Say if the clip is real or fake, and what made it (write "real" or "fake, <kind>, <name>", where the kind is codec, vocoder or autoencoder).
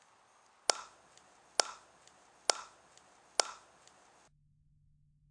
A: real